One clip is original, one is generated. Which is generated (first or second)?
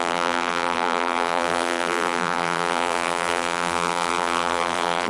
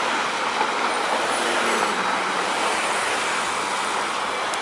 first